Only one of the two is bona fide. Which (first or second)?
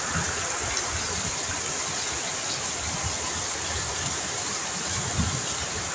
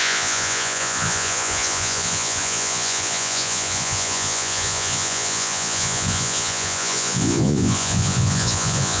first